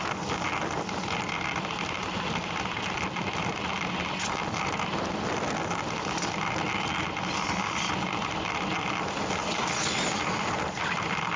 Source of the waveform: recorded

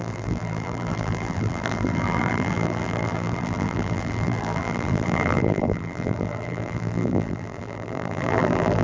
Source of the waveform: remade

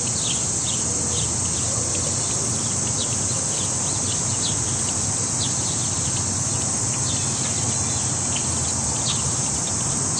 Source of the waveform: recorded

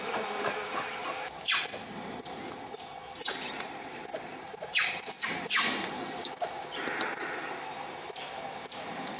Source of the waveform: recorded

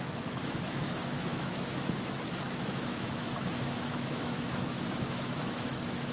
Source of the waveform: remade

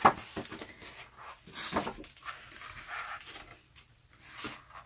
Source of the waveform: recorded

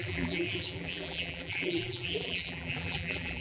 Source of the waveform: remade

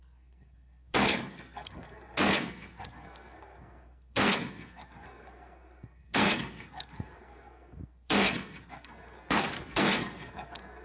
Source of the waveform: remade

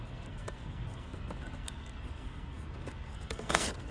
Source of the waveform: remade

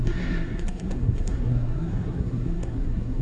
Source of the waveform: remade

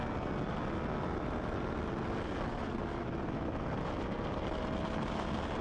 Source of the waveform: recorded